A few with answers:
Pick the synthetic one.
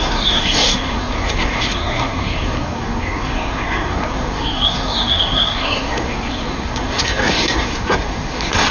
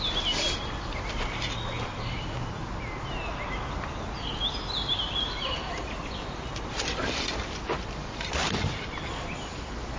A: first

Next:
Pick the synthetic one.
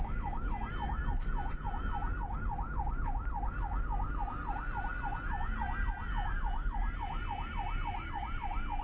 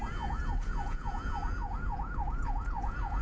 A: second